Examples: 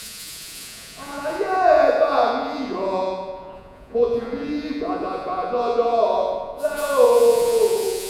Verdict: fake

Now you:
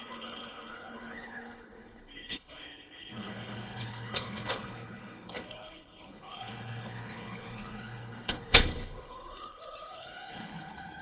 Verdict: fake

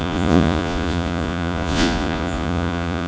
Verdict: fake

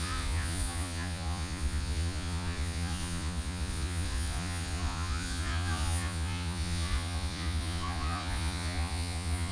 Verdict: fake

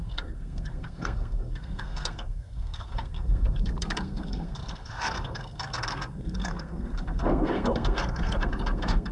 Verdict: fake